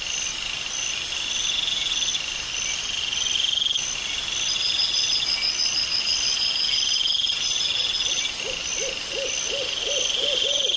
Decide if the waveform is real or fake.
real